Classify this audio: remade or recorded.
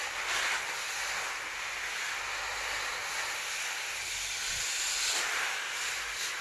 recorded